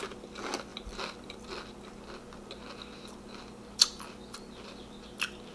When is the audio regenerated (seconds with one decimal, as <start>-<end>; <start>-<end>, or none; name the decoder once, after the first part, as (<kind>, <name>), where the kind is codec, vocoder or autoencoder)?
0.7-1.4 (vocoder, BigVGAN v2)